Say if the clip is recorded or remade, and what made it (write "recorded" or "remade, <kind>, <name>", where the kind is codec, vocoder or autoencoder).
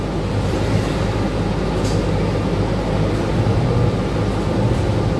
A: recorded